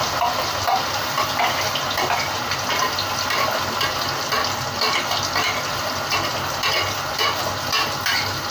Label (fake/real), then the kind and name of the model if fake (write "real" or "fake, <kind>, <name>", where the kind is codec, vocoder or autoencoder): real